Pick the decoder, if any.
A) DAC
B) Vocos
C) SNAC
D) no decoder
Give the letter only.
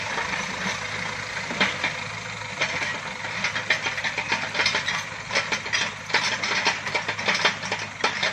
D